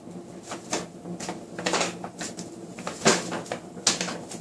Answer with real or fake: real